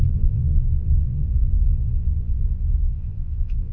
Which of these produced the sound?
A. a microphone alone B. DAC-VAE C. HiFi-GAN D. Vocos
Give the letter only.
D